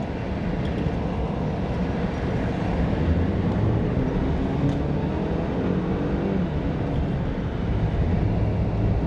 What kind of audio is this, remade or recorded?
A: recorded